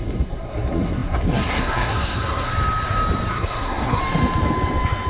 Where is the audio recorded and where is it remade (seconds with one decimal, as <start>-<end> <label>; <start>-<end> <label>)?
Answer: 0.0-2.5 remade; 2.5-3.3 recorded; 3.3-4.0 remade; 4.0-5.1 recorded